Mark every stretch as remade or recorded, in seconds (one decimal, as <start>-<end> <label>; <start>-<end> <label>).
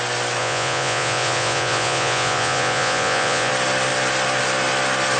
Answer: 0.0-0.4 recorded; 0.4-3.5 remade; 3.5-5.2 recorded